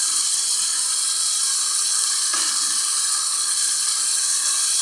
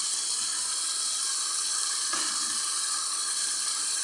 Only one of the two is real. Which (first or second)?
first